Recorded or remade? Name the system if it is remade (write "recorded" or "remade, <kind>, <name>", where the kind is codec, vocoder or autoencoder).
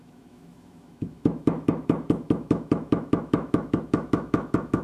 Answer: remade, autoencoder, DAC-VAE